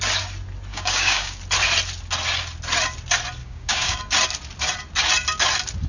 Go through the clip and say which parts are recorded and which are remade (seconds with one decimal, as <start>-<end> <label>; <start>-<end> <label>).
0.0-0.7 recorded; 0.7-1.4 remade; 1.4-3.4 recorded; 3.4-4.0 remade; 4.0-5.9 recorded